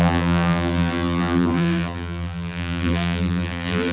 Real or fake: fake